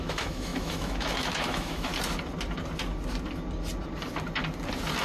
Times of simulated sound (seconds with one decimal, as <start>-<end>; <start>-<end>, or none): 0.0-1.9